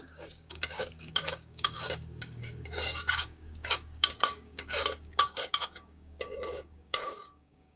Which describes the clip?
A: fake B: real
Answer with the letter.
A